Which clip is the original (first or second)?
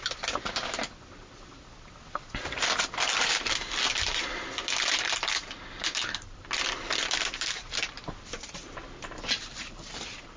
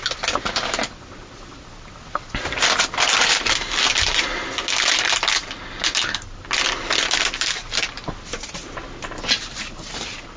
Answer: second